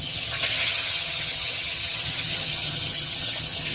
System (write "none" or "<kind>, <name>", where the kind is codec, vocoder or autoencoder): vocoder, HiFi-GAN